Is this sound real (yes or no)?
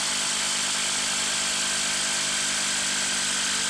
yes